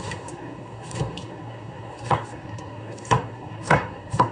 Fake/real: fake